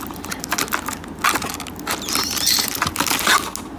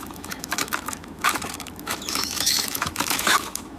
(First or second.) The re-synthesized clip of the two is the second